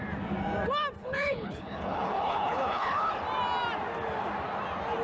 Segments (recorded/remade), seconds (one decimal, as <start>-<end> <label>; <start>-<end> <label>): 0.0-1.0 recorded; 1.0-3.1 remade; 3.1-5.0 recorded